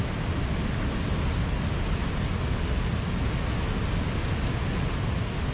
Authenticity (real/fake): real